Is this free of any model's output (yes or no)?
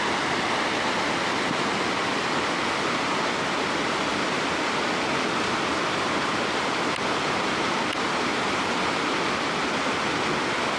yes